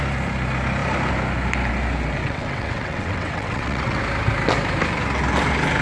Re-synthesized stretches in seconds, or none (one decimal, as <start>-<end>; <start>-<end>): 2.2-4.0